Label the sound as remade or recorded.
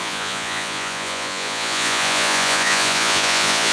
remade